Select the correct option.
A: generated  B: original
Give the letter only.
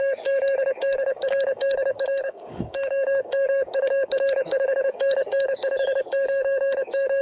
A